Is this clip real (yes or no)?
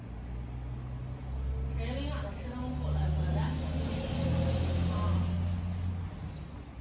yes